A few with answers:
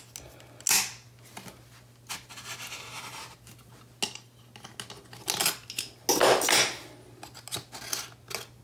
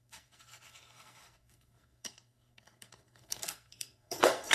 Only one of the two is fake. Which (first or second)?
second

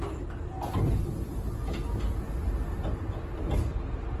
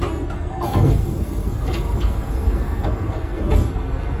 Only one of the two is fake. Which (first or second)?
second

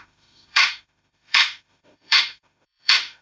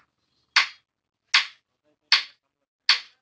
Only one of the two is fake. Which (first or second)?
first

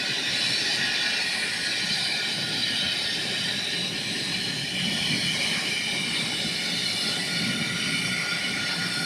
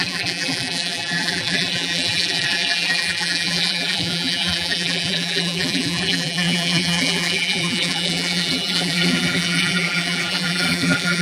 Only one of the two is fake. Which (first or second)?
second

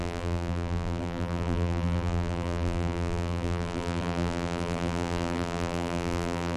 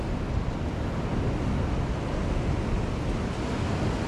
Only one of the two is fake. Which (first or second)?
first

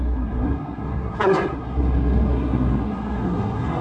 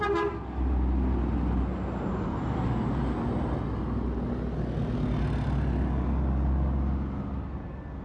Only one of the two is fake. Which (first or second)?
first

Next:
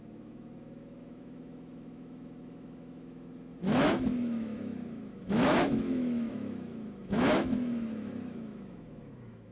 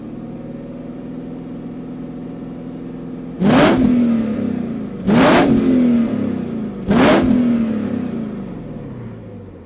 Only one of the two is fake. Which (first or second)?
first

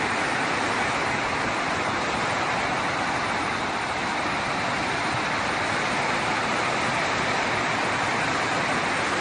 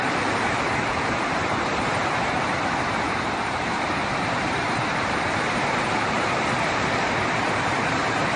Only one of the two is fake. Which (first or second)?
second